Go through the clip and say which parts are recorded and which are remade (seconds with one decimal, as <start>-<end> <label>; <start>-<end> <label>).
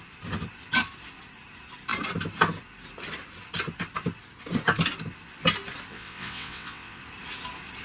0.0-5.9 recorded; 5.9-7.0 remade; 7.0-7.8 recorded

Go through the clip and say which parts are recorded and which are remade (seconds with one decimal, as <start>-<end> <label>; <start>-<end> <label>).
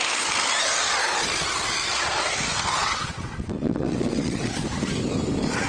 0.0-2.8 recorded; 2.8-4.5 remade; 4.5-5.7 recorded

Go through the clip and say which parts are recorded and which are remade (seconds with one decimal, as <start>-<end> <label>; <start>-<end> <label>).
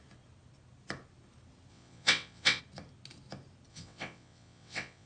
0.0-1.7 recorded; 1.7-2.6 remade; 2.6-3.7 recorded; 3.7-5.1 remade